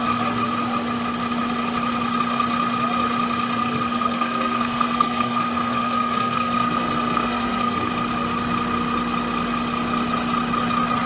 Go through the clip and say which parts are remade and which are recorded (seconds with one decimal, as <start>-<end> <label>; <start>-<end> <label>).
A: 0.0-3.6 recorded; 3.6-7.9 remade; 7.9-11.1 recorded